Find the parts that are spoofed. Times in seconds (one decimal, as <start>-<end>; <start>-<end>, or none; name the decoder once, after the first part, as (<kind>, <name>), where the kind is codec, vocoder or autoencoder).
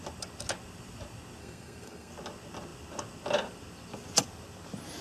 1.4-2.1 (codec, SNAC)